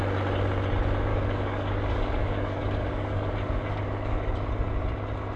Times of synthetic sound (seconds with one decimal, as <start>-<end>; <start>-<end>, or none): 1.1-4.3